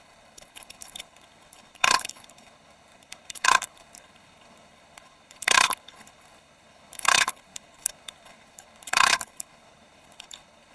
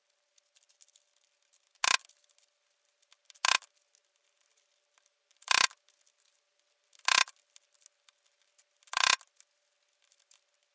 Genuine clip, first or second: second